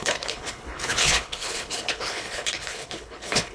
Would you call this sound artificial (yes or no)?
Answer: yes